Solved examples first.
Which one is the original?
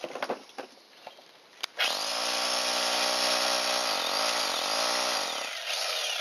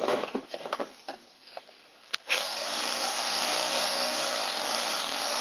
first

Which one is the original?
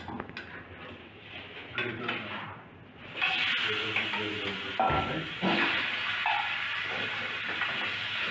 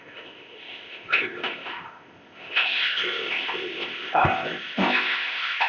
first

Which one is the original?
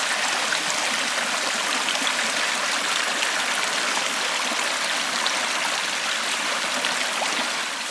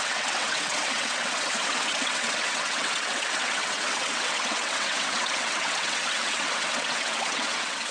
first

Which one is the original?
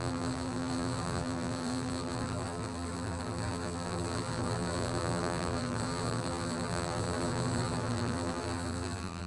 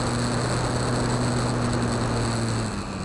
second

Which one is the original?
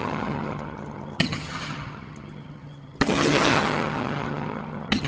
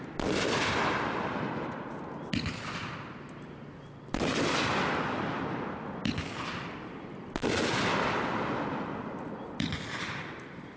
second